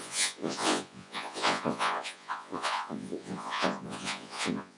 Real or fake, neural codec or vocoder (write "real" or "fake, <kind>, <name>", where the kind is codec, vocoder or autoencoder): fake, vocoder, Vocos